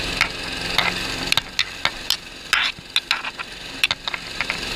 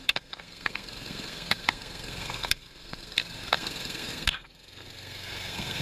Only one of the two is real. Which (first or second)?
first